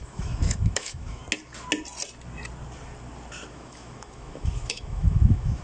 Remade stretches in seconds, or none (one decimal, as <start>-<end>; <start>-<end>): 0.0-1.2; 3.5-5.6